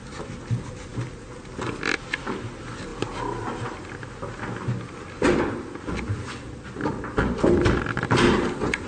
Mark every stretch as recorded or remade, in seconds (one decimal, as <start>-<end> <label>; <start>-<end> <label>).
0.0-8.9 recorded